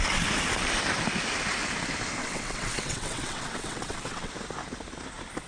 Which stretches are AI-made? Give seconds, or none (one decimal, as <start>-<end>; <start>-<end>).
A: 2.2-4.3